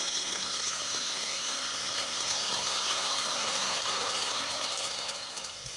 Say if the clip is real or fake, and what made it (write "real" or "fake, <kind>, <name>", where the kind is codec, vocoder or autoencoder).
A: fake, codec, SNAC